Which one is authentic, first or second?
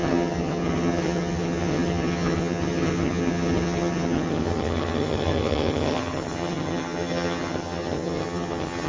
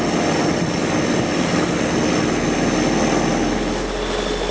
second